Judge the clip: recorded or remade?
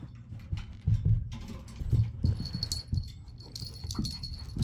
recorded